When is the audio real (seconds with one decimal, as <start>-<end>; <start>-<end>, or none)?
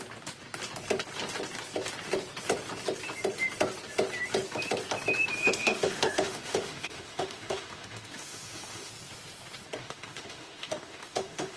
0.0-5.4; 8.9-9.8